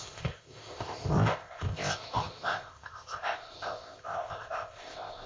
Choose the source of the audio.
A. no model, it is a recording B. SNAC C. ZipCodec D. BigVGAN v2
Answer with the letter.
C